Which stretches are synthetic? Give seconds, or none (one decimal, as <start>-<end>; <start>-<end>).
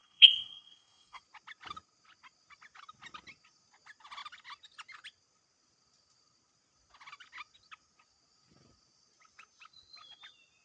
0.0-1.2